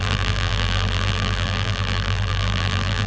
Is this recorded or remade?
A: remade